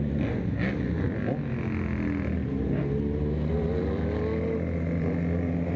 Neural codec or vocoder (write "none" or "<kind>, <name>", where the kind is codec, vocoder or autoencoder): none